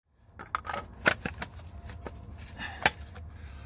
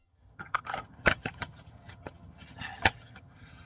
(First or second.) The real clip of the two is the first